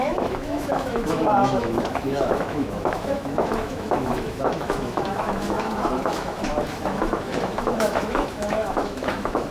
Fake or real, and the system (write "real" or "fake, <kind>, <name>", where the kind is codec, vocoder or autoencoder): fake, autoencoder, DAC-VAE